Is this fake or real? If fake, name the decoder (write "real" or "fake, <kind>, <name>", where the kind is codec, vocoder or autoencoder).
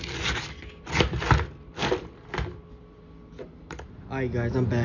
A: real